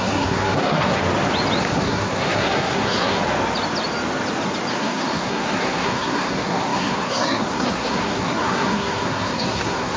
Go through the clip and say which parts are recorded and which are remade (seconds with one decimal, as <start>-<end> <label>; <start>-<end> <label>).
0.0-1.0 remade; 1.0-1.6 recorded; 1.6-3.2 remade; 3.2-4.7 recorded; 4.7-10.0 remade